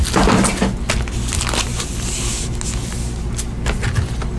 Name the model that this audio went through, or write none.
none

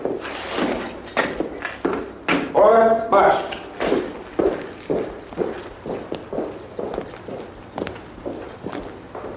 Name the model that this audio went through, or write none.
none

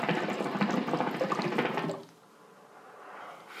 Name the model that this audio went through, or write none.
none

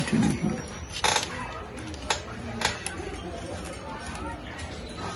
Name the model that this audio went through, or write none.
none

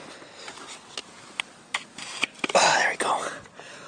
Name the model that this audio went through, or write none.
none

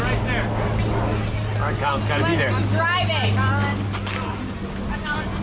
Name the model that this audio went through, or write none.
none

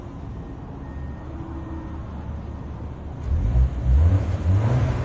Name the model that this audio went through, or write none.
none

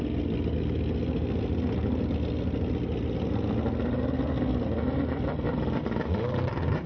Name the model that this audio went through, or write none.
none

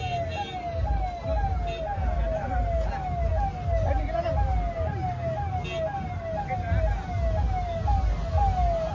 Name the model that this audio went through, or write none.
none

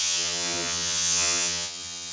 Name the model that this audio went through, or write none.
vocoder, HiFi-GAN